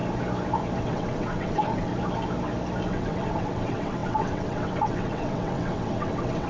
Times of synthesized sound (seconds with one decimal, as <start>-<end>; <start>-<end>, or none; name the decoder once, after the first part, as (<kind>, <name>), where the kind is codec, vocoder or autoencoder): 0.8-1.9 (vocoder, WaveNeXt); 2.9-6.5

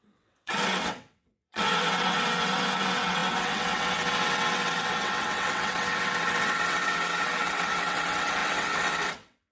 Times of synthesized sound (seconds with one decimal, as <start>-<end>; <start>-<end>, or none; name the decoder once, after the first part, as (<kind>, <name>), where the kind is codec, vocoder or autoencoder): 0.0-9.5 (vocoder, WaveNeXt)

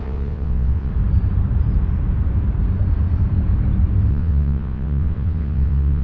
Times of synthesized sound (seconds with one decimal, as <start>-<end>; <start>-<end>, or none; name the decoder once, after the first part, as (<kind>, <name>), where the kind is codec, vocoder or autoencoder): 0.0-0.9 (vocoder, WaveNeXt); 4.1-6.0

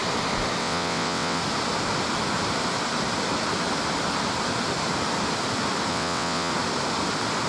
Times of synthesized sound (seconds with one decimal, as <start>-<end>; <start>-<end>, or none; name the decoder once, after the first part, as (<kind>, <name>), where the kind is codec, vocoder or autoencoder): 0.6-1.4 (vocoder, WaveNeXt); 5.9-6.5

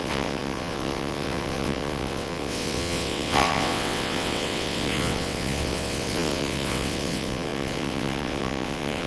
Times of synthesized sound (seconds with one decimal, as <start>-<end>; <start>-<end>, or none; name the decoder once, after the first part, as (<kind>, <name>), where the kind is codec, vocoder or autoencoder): 0.0-9.1 (vocoder, WaveNeXt)

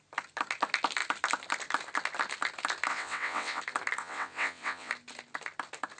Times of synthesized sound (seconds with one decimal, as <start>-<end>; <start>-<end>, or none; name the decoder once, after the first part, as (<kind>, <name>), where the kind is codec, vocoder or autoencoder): 2.9-3.6 (vocoder, WaveNeXt); 4.0-4.9

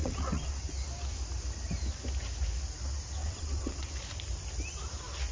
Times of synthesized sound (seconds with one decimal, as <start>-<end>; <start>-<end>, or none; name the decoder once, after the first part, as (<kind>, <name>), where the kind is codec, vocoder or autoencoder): 0.0-0.6 (vocoder, WaveNeXt); 3.2-4.0